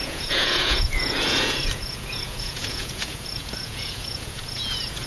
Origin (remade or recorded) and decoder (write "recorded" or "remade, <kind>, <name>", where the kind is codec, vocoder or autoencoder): remade, vocoder, Vocos